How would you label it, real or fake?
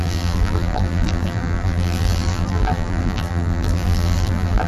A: fake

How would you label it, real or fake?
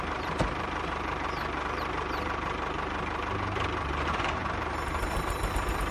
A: fake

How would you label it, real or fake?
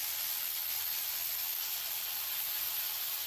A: real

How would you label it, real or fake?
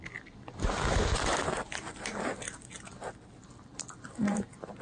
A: real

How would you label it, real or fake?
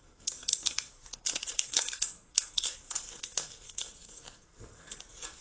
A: fake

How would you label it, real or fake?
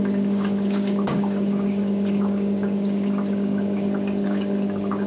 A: fake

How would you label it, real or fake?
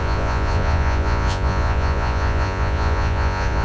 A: fake